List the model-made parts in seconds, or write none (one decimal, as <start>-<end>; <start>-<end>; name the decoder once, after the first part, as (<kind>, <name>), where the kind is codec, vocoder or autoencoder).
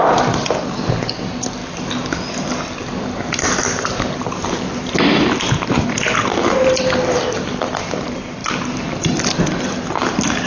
none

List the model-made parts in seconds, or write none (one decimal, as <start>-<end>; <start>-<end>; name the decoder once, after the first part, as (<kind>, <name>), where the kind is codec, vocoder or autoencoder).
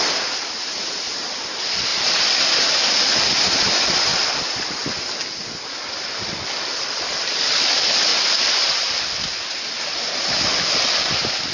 4.1-4.9 (vocoder, BigVGAN v2); 8.1-8.8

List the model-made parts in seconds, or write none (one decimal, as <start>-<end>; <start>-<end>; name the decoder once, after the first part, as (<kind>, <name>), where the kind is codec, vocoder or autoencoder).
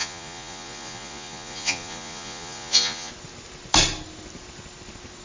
0.0-3.1 (vocoder, Vocos)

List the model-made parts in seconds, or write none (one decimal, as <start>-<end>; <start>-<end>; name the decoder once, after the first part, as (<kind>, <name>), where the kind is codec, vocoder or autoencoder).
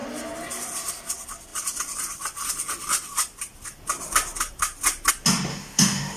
5.5-6.2 (autoencoder, DAC-VAE)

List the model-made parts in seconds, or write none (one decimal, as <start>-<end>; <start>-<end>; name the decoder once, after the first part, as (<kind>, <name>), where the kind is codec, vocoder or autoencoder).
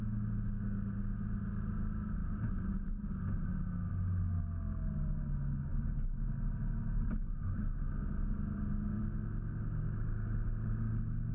none